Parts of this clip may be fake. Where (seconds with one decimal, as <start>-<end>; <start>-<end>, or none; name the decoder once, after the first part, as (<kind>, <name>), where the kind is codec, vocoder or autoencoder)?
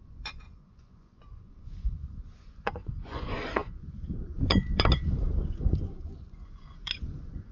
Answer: 0.0-7.5 (vocoder, Vocos)